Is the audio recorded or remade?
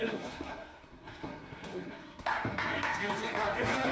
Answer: remade